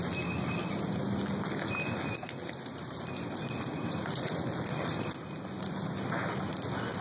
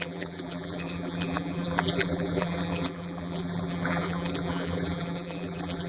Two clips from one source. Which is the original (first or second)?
first